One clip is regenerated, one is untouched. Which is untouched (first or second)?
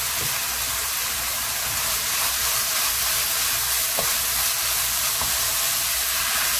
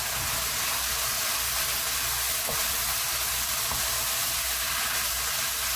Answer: second